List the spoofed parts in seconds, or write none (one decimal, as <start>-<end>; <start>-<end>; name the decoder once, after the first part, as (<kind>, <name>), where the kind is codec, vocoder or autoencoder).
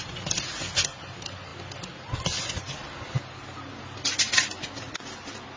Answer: none